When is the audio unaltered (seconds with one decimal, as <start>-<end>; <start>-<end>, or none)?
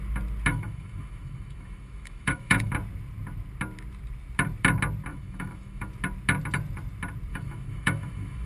0.0-0.5; 2.7-5.1; 5.9-7.3